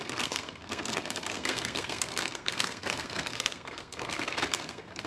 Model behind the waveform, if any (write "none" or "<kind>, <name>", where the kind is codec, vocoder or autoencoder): codec, SNAC